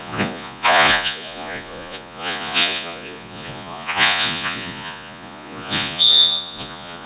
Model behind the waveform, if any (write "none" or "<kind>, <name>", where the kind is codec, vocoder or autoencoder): vocoder, Vocos